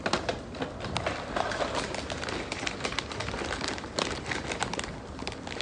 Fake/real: fake